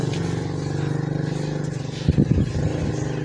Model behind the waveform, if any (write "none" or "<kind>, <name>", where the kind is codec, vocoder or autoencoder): none